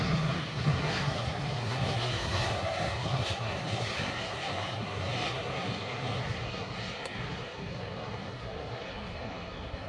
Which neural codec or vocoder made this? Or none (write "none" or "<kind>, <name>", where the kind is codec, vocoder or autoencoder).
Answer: codec, SNAC